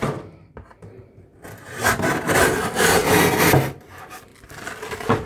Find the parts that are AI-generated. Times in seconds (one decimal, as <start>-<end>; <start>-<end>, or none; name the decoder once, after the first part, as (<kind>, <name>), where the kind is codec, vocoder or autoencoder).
4.3-5.3 (vocoder, BigVGAN v2)